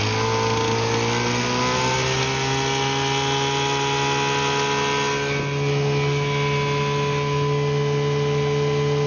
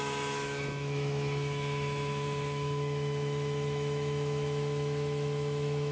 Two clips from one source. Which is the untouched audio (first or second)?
first